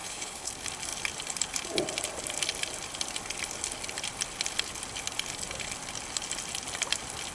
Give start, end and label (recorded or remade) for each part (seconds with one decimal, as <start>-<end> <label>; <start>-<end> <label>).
0.0-0.5 remade; 0.5-7.3 recorded